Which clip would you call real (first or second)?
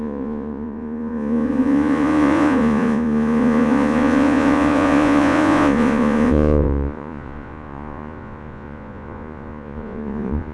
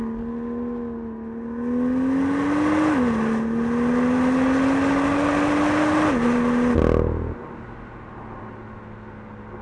second